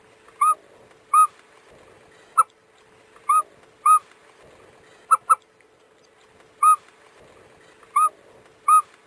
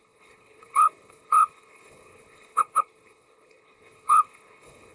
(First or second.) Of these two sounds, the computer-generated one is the second